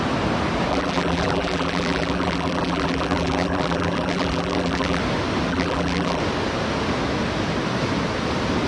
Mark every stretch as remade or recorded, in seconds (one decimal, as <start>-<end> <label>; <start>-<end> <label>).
0.0-0.7 recorded; 0.7-5.0 remade; 5.0-5.5 recorded; 5.5-6.2 remade; 6.2-8.7 recorded